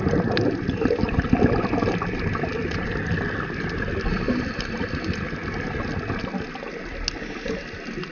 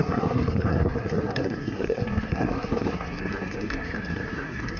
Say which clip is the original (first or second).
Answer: first